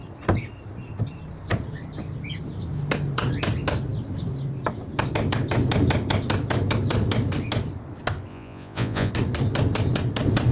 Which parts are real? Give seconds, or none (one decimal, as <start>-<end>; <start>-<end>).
0.0-8.3; 9.1-10.5